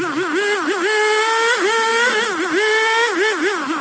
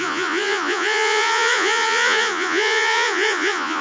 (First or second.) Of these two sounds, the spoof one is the second